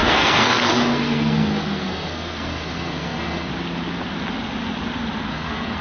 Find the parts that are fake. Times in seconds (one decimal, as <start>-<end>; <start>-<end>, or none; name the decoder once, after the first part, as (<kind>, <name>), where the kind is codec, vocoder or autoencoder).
0.0-3.5 (codec, SNAC); 5.3-5.8